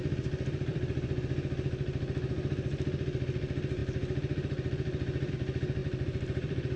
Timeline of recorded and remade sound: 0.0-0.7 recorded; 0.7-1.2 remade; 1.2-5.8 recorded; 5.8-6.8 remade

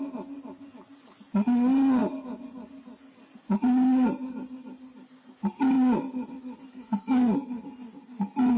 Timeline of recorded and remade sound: 0.0-6.7 recorded; 6.7-7.3 remade; 7.3-8.6 recorded